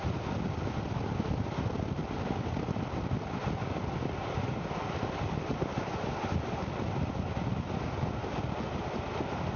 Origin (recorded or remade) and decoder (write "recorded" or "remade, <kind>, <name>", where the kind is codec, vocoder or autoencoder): recorded